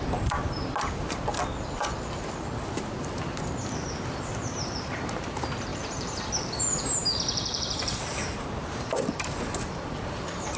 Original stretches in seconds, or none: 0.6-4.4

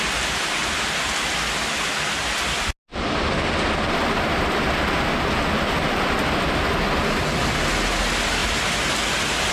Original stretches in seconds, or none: 0.0-2.9; 4.1-9.5

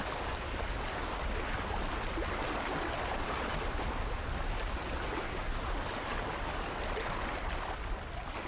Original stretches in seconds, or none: 0.0-8.5

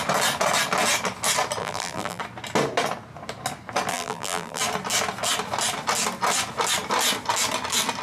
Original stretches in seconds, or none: 0.0-1.6; 2.2-3.9; 4.6-8.0

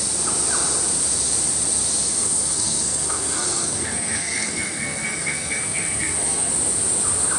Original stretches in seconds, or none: 0.0-2.1; 6.5-7.4

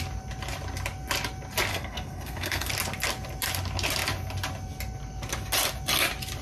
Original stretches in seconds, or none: 0.0-1.7; 2.7-6.4

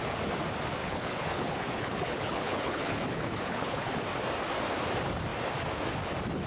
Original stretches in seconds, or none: 0.0-0.8; 4.0-6.5

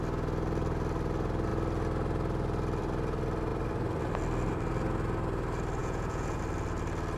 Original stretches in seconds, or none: 0.0-5.8; 6.4-7.2